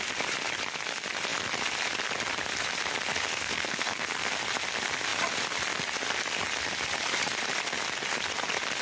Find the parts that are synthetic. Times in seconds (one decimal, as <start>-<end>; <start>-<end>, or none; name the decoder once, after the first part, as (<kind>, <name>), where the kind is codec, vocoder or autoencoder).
3.3-4.3 (codec, SNAC)